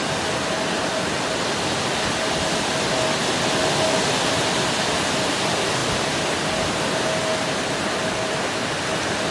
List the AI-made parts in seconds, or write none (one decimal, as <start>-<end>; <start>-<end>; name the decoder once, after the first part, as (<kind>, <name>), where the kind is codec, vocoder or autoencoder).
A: none